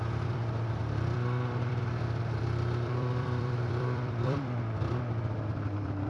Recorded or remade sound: remade